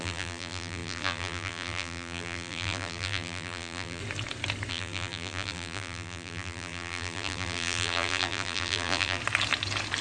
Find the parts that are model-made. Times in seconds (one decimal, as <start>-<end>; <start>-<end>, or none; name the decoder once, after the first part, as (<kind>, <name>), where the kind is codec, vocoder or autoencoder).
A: 0.0-4.0 (vocoder, BigVGAN v2); 4.7-9.2